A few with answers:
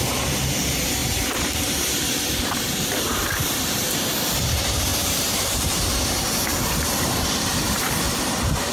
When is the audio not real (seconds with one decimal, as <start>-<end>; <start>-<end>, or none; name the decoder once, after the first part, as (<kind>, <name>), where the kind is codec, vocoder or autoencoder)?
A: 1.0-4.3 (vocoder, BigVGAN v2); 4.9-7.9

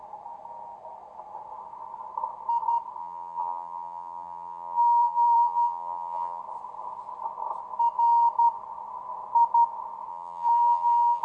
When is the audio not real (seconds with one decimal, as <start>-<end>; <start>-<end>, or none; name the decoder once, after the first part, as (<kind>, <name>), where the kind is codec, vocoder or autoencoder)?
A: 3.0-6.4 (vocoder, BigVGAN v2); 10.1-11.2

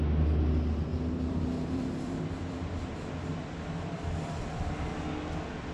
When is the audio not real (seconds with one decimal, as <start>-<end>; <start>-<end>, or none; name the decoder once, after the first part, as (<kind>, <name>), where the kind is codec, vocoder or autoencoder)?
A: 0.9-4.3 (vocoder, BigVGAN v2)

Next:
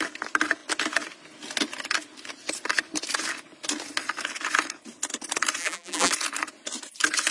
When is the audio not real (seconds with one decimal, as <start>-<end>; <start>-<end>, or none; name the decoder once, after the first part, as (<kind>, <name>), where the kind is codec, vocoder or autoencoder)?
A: 5.6-6.1 (vocoder, BigVGAN v2)

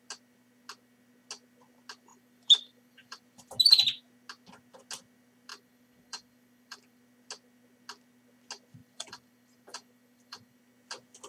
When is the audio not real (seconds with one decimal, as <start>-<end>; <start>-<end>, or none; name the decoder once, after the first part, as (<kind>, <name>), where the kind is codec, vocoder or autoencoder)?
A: 2.1-3.2 (vocoder, BigVGAN v2); 5.5-7.0; 8.8-10.6

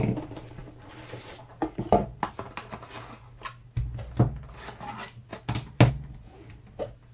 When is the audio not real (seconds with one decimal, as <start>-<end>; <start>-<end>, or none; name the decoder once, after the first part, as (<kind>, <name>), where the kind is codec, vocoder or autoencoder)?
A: none

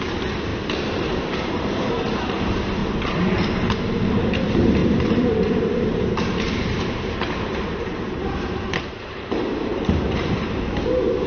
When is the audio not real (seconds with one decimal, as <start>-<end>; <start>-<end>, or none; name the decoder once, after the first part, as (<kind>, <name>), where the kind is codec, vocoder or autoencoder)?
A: 0.0-2.8 (vocoder, BigVGAN v2); 4.3-11.3

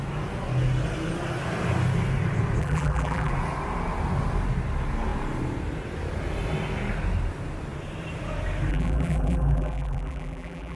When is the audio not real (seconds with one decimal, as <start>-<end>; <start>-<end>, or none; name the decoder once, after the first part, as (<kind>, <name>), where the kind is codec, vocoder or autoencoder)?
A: 2.6-3.3 (vocoder, BigVGAN v2); 8.7-10.8